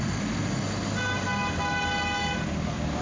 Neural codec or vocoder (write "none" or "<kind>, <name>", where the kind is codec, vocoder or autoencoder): none